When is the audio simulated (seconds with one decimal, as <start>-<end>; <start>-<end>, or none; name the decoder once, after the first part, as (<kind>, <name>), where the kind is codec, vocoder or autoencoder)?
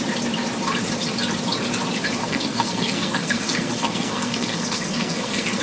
2.2-5.6 (codec, SNAC)